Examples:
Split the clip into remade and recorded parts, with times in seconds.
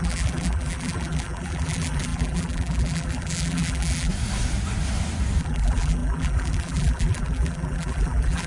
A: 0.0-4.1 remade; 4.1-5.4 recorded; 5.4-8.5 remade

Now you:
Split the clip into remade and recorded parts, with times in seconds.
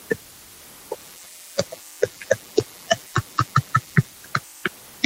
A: 0.0-1.0 recorded; 1.0-4.1 remade; 4.1-5.1 recorded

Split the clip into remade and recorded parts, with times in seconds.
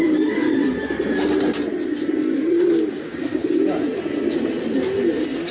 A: 0.0-5.5 recorded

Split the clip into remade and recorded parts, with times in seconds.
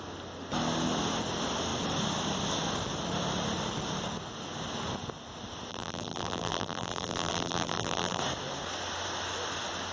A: 0.0-5.7 recorded; 5.7-8.2 remade; 8.2-9.9 recorded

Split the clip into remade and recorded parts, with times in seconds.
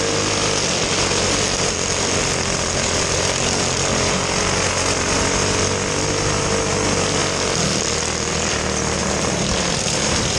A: 0.0-10.4 recorded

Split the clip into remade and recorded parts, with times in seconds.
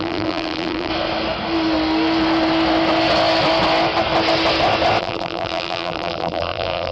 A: 0.0-0.9 remade; 0.9-5.0 recorded; 5.0-6.9 remade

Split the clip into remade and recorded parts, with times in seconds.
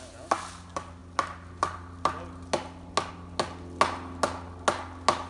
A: 0.0-5.3 recorded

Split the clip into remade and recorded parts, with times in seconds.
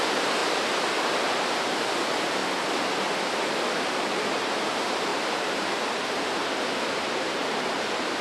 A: 0.0-0.4 remade; 0.4-1.0 recorded; 1.0-2.4 remade; 2.4-3.8 recorded; 3.8-8.2 remade